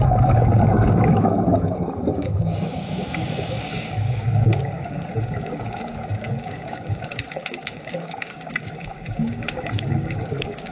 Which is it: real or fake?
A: fake